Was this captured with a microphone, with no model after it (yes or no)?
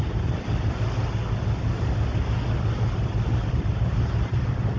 yes